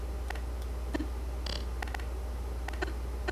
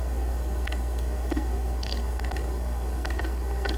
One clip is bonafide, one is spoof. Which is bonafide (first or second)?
first